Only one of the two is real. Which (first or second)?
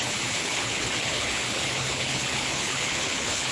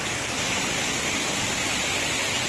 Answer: second